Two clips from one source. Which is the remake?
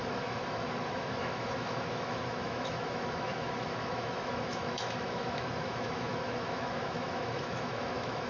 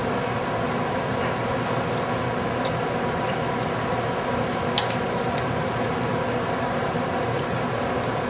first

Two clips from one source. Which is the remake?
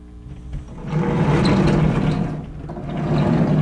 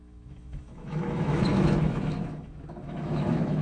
second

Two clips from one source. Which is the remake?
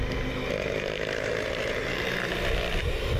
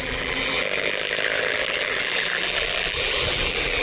second